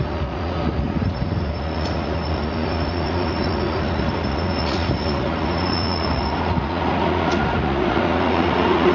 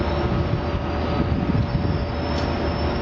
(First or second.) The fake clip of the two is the first